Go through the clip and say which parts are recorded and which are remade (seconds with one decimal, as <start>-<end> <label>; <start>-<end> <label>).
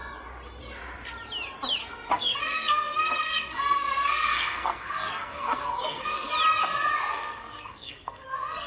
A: 0.0-1.8 recorded; 1.8-6.3 remade; 6.3-7.1 recorded; 7.1-8.7 remade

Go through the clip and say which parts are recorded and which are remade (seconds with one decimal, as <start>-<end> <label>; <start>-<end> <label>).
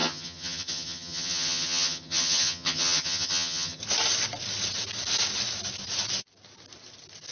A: 0.0-3.8 remade; 3.8-7.3 recorded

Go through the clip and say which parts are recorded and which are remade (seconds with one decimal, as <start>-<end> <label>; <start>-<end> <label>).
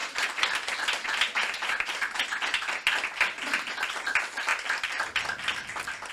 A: 0.0-6.1 recorded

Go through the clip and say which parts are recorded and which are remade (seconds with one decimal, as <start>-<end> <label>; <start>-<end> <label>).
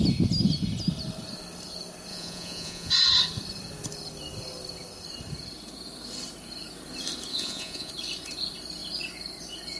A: 0.0-2.1 recorded; 2.1-2.9 remade; 2.9-7.3 recorded; 7.3-7.9 remade; 7.9-9.8 recorded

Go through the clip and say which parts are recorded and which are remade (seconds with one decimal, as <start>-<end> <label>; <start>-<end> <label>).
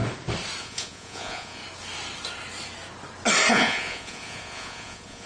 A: 0.0-0.6 recorded; 0.6-1.6 remade; 1.6-3.5 recorded; 3.5-5.3 remade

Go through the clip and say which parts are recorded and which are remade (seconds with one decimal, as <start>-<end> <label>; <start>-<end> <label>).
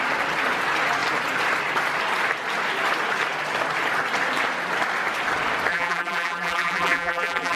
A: 0.0-5.7 recorded; 5.7-7.6 remade